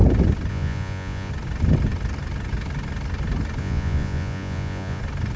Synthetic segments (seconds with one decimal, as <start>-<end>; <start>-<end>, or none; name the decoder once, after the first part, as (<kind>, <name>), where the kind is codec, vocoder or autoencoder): 0.5-1.3 (vocoder, Vocos); 3.6-5.0